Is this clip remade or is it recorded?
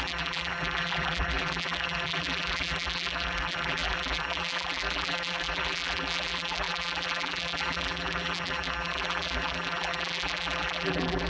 remade